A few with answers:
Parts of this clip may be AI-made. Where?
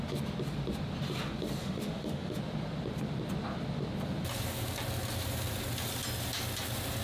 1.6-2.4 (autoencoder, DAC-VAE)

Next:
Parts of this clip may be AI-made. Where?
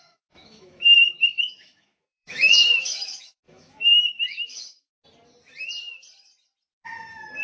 0.0-5.0 (autoencoder, DAC-VAE)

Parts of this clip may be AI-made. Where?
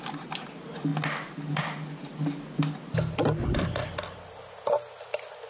none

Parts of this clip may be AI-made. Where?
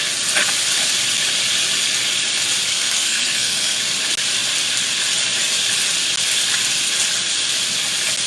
2.7-3.8 (codec, SNAC)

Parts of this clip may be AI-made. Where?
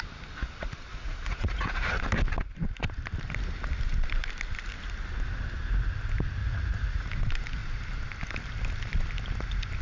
0.9-2.0 (vocoder, Vocos); 6.4-7.1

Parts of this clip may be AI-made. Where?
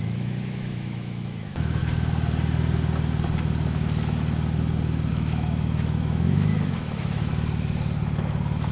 0.0-1.8 (autoencoder, DAC-VAE); 5.1-7.3